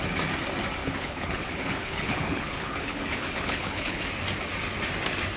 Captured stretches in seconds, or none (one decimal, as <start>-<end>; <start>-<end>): 0.0-0.8; 4.0-5.4